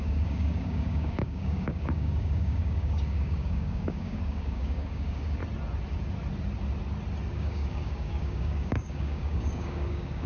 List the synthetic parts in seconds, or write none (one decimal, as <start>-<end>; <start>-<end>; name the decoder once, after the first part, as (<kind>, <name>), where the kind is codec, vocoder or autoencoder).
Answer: 0.0-5.4 (codec, DAC); 7.3-10.3